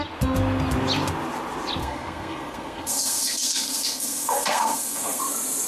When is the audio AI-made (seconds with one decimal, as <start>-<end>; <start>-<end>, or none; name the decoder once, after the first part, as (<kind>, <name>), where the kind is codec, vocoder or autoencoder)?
1.8-5.2 (codec, SNAC)